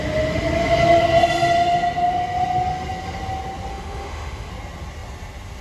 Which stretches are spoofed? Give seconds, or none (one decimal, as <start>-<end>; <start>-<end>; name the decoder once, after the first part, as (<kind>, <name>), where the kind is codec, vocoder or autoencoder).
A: 3.7-4.5 (autoencoder, DAC-VAE)